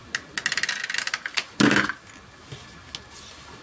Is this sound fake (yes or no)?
no